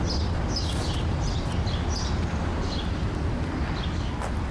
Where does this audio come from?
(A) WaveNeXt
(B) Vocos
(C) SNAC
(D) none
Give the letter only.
D